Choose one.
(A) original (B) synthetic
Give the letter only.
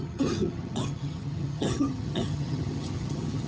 B